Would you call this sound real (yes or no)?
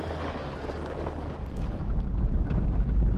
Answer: no